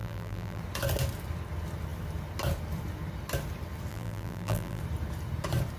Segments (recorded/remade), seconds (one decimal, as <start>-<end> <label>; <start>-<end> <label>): 0.0-0.6 remade; 0.6-3.9 recorded; 3.9-4.8 remade; 4.8-5.8 recorded